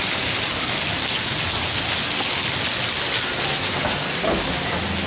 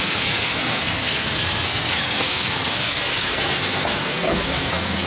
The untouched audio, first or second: first